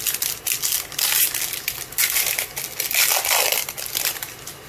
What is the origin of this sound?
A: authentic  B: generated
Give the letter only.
A